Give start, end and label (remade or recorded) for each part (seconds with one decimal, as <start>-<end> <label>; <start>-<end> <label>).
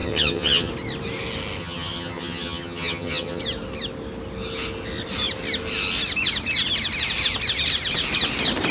0.0-0.7 remade; 0.7-1.6 recorded; 1.6-3.4 remade; 3.4-8.7 recorded